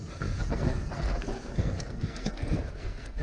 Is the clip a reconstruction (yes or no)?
yes